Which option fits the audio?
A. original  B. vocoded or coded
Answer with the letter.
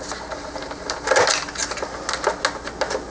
A